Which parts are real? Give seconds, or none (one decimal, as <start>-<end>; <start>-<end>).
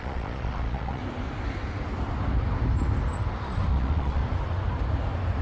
1.0-3.7; 4.2-5.4